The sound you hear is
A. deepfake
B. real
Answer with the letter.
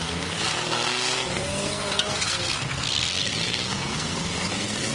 A